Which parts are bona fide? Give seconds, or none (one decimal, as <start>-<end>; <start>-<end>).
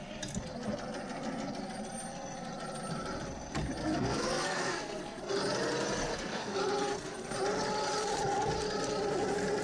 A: 0.0-3.8; 5.2-6.1; 6.6-9.6